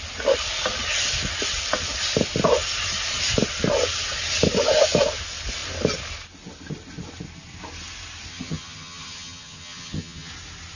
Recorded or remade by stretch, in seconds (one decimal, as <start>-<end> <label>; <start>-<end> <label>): 0.0-8.3 recorded; 8.3-10.3 remade; 10.3-10.8 recorded